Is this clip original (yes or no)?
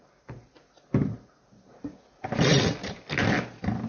yes